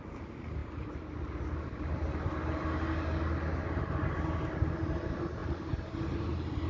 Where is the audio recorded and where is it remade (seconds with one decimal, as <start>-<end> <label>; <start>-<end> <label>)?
0.0-6.7 recorded